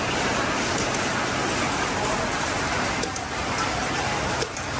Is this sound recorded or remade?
recorded